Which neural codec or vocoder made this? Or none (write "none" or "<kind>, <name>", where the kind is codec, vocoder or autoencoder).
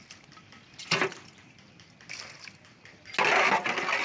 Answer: none